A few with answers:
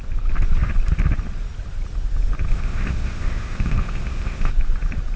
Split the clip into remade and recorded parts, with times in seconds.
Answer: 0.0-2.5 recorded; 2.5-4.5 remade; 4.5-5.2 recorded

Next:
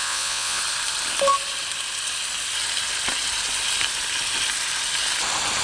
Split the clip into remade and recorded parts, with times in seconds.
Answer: 0.0-0.6 remade; 0.6-5.6 recorded

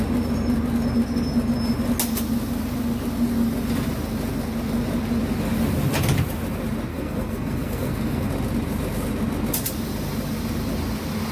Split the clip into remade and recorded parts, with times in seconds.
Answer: 0.0-6.9 recorded; 6.9-8.3 remade; 8.3-11.3 recorded

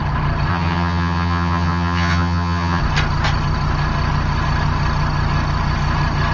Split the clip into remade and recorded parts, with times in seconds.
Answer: 0.0-0.5 recorded; 0.5-2.8 remade; 2.8-6.3 recorded

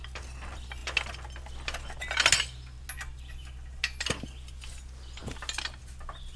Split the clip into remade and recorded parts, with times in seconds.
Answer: 0.0-6.4 recorded

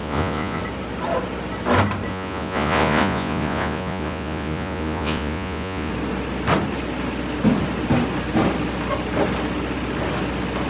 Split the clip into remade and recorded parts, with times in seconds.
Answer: 0.0-0.6 remade; 0.6-2.1 recorded; 2.1-5.9 remade; 5.9-10.7 recorded

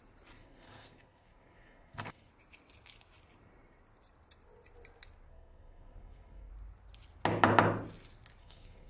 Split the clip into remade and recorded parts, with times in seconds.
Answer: 0.0-0.4 recorded; 0.4-2.3 remade; 2.3-5.3 recorded; 5.3-6.5 remade; 6.5-8.4 recorded; 8.4-8.9 remade

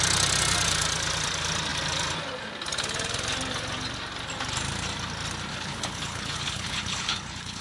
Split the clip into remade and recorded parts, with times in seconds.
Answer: 0.0-5.5 recorded; 5.5-7.6 remade